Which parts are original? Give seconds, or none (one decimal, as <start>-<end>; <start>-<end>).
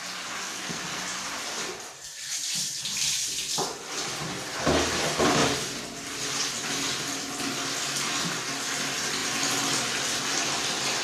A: 0.0-0.4; 1.0-11.0